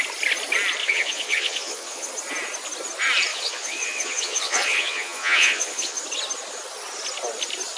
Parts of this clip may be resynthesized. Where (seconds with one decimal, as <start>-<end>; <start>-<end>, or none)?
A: 0.8-2.1; 3.3-6.0